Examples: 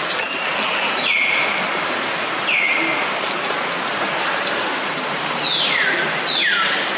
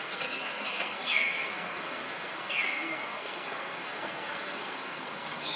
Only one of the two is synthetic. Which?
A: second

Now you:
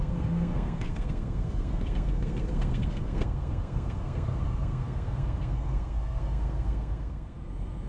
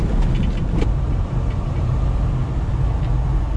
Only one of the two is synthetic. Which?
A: first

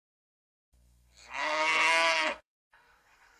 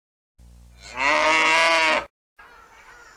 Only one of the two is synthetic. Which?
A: first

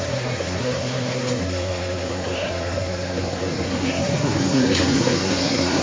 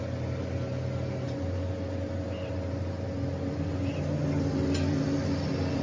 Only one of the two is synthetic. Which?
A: first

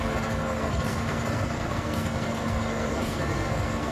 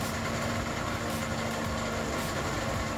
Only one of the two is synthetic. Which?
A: first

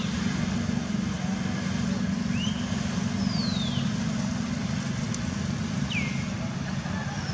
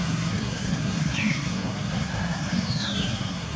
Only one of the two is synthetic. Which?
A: second